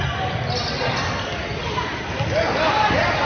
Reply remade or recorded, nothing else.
recorded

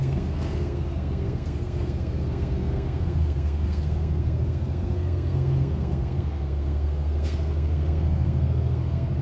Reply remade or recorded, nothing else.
remade